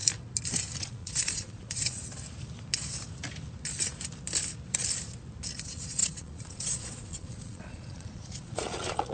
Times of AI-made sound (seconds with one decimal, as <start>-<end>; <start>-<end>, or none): 0.8-2.0; 5.6-9.1